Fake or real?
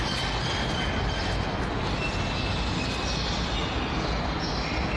real